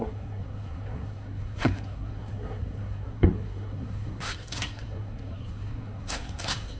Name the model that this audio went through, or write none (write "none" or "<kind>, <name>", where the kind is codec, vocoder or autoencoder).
codec, SNAC